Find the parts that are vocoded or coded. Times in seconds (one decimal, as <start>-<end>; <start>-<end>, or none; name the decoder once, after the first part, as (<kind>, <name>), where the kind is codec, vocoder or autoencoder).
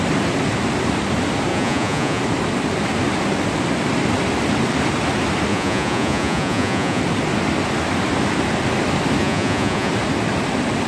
1.5-2.2 (vocoder, Vocos); 5.5-7.0; 9.2-9.9